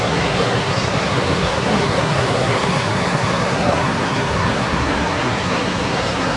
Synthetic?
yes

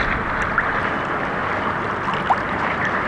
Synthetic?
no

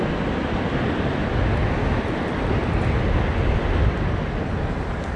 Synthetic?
no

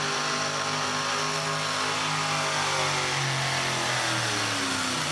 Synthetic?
no